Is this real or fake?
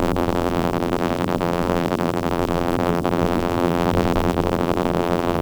fake